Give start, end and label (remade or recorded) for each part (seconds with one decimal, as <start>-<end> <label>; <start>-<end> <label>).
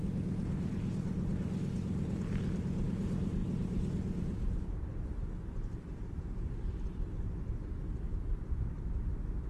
0.0-9.5 recorded